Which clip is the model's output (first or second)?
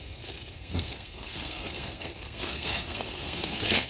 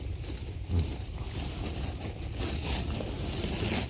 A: first